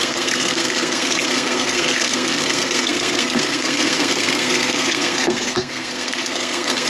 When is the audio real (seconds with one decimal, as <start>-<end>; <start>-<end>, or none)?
none